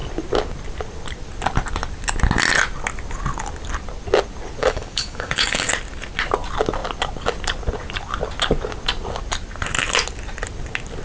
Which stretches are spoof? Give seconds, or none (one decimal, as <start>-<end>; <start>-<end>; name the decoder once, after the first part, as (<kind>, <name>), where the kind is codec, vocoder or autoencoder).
4.6-5.7 (codec, DAC)